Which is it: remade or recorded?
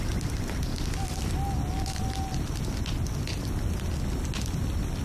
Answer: recorded